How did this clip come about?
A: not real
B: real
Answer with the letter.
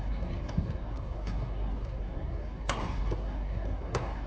A